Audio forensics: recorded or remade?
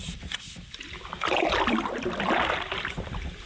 recorded